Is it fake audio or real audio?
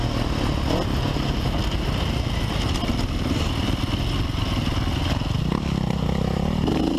real